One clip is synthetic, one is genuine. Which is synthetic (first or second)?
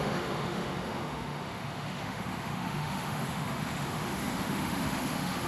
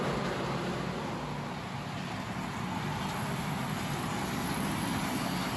first